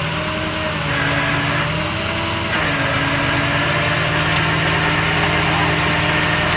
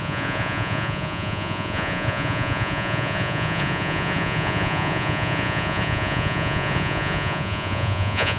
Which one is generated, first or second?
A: second